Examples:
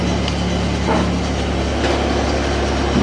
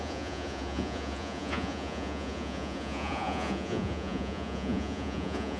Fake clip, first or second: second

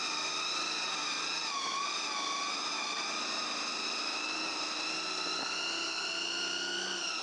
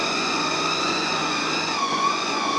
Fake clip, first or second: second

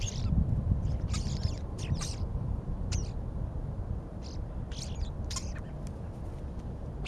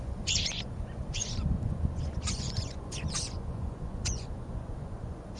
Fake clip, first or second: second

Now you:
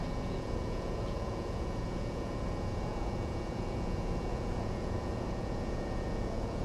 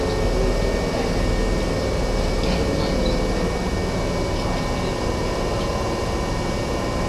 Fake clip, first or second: first